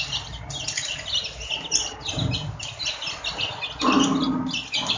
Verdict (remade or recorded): recorded